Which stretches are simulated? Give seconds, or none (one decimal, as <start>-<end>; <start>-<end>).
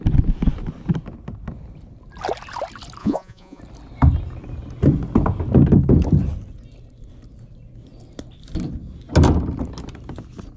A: 3.0-3.6